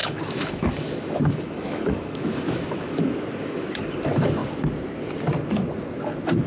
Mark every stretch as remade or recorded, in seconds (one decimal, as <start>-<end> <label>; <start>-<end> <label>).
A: 0.0-3.8 remade; 3.8-6.5 recorded